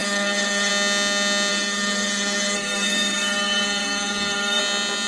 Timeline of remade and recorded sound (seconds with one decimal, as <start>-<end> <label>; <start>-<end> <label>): 0.0-0.7 remade; 0.7-1.5 recorded; 1.5-4.6 remade; 4.6-5.1 recorded